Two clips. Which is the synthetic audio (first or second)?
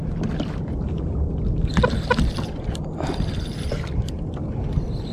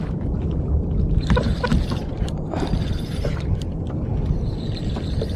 second